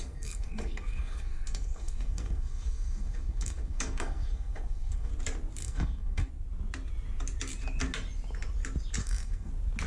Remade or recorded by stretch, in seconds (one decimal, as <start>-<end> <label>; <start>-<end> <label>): 0.0-5.1 remade; 5.1-5.6 recorded; 5.6-6.3 remade; 6.3-9.0 recorded; 9.0-9.5 remade; 9.5-9.9 recorded